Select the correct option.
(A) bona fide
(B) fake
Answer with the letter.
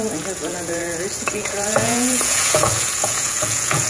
B